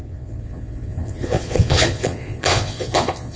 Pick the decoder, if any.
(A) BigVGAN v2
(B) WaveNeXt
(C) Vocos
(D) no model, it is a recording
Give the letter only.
C